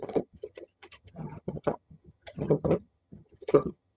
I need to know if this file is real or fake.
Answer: fake